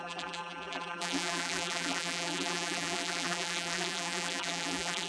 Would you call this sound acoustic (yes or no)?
no